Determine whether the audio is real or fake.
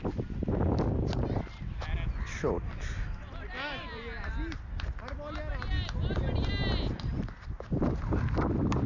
real